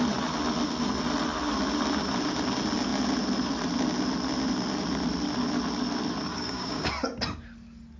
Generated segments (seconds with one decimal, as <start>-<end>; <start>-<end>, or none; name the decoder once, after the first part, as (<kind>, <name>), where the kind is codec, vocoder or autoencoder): 6.3-6.9 (codec, DAC)